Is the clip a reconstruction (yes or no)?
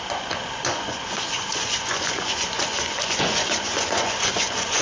yes